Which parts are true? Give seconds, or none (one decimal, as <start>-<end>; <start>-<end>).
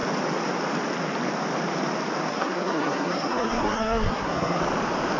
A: 0.0-2.3; 4.6-5.2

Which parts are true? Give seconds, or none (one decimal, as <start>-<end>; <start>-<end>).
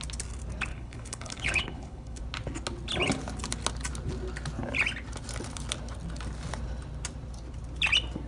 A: 0.0-0.7; 2.2-8.3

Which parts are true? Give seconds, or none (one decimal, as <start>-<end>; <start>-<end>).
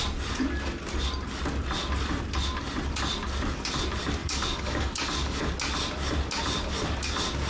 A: 0.0-4.2; 5.4-7.5